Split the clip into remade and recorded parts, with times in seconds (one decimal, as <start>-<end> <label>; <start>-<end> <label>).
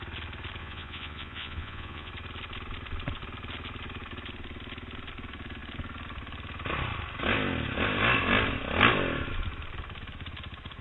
0.0-0.6 recorded; 0.6-2.1 remade; 2.1-10.8 recorded